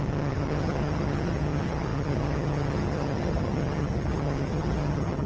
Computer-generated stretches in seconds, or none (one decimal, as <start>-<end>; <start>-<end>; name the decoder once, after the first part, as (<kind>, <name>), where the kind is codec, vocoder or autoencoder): 0.0-5.3 (vocoder, HiFi-GAN)

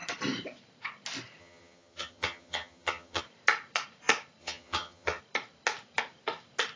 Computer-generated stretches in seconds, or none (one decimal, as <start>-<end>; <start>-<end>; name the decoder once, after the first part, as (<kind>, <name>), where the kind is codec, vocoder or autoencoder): 1.4-3.2 (vocoder, HiFi-GAN); 4.4-5.2